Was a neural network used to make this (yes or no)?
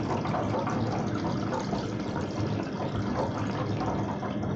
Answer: no